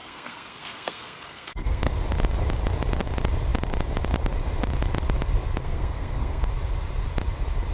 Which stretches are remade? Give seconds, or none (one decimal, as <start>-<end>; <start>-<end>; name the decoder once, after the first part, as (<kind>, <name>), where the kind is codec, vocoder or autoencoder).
0.0-1.9 (codec, SNAC); 5.6-6.5